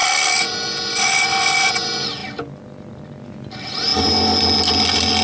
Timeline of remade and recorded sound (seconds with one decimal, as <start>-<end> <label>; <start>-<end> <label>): 0.0-5.2 recorded